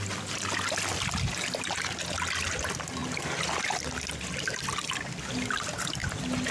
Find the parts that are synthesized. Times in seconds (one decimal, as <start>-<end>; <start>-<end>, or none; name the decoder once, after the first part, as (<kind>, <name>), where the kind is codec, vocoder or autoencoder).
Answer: none